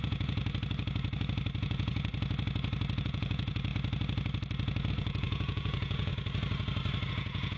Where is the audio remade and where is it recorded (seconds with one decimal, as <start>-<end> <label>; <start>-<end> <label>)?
0.0-0.4 remade; 0.4-1.6 recorded; 1.6-2.1 remade; 2.1-3.0 recorded; 3.0-3.7 remade; 3.7-4.9 recorded; 4.9-6.1 remade; 6.1-7.1 recorded; 7.1-7.6 remade